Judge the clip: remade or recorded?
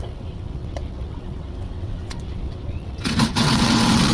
remade